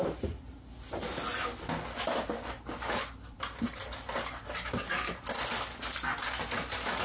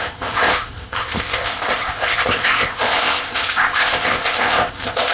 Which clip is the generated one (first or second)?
second